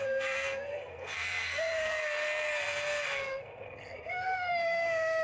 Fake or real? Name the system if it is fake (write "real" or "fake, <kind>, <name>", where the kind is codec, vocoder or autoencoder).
fake, codec, SNAC